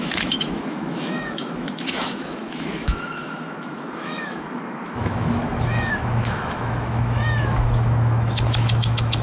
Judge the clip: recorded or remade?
remade